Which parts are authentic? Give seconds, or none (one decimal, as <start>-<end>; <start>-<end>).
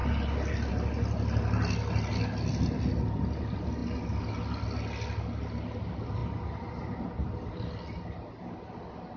0.0-9.2